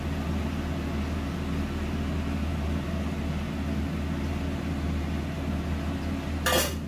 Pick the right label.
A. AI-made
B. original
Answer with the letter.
B